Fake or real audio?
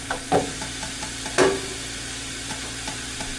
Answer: fake